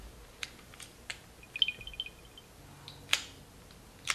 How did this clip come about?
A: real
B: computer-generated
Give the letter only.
A